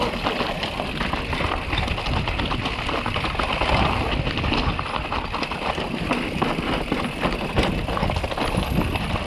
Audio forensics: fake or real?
real